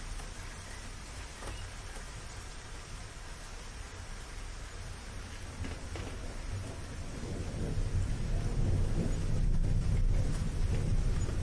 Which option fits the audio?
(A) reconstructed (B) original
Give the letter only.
B